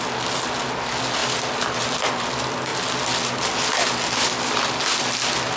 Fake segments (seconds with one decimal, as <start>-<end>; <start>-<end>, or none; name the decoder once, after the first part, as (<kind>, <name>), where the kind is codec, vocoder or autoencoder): 1.2-2.0 (vocoder, BigVGAN v2)